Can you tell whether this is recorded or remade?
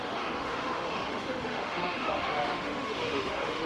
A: remade